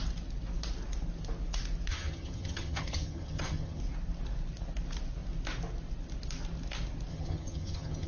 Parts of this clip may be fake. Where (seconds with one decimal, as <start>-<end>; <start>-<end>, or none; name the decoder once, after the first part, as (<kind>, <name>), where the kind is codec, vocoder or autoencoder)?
1.9-3.8 (vocoder, HiFi-GAN); 7.1-8.1